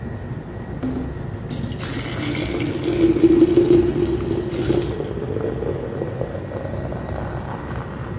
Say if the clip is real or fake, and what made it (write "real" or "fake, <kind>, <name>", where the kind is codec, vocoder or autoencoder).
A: real